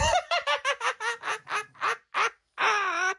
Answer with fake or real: real